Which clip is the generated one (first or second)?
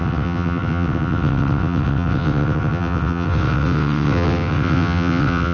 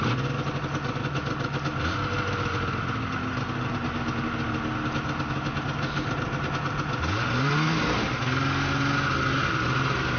first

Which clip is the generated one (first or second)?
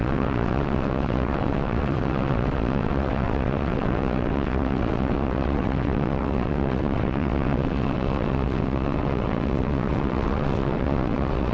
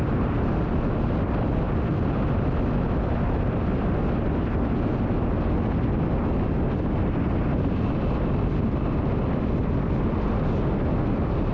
first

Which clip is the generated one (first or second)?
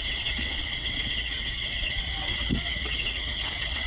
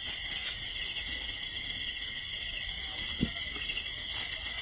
first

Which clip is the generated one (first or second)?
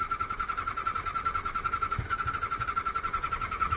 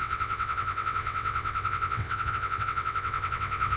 second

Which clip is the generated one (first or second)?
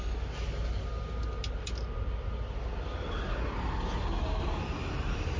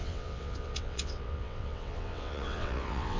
second